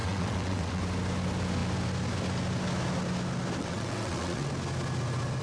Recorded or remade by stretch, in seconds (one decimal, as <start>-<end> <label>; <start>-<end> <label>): 0.0-0.8 remade; 0.8-3.6 recorded; 3.6-4.5 remade; 4.5-5.4 recorded